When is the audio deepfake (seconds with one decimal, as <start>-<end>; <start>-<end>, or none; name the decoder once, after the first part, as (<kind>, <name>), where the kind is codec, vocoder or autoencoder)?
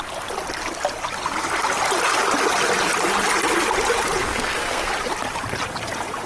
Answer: 4.2-4.9 (codec, SNAC)